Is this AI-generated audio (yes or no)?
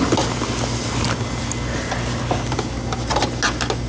no